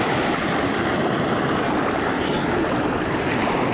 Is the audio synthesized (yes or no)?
no